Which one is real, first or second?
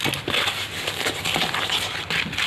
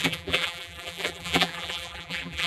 first